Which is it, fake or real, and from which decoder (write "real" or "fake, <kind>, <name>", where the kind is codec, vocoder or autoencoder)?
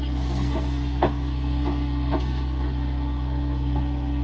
fake, codec, SNAC